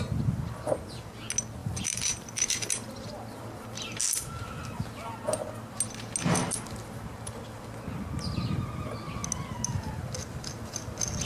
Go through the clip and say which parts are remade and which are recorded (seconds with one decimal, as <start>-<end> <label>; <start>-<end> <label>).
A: 0.0-1.6 recorded; 1.6-2.9 remade; 2.9-11.3 recorded